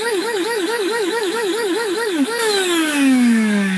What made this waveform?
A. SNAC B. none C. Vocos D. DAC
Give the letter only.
D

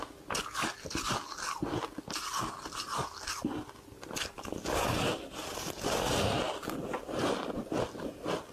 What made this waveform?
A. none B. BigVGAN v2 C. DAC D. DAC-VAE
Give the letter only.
A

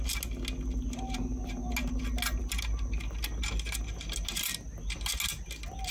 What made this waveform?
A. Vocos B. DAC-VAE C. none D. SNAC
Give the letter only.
C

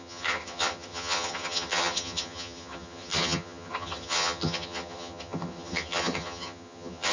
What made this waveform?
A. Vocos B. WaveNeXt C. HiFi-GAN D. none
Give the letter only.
C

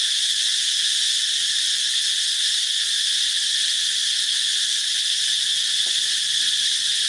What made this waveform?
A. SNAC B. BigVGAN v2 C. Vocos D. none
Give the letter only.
D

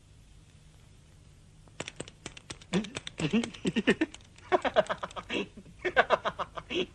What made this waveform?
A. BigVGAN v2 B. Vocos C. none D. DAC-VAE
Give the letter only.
A